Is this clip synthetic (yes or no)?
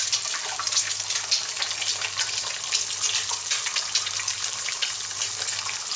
no